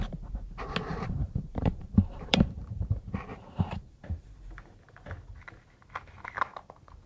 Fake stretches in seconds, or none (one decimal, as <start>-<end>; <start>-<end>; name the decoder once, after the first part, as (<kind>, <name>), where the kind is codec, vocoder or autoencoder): 0.9-2.6 (vocoder, BigVGAN v2); 3.3-4.7